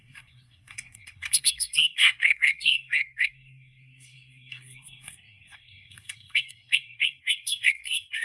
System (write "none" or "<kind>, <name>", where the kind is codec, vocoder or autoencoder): codec, SNAC